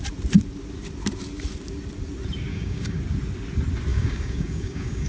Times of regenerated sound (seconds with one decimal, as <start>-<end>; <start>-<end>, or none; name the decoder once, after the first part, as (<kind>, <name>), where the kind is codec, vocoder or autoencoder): 2.5-3.0 (codec, DAC); 3.9-5.1